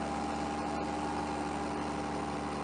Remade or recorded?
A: recorded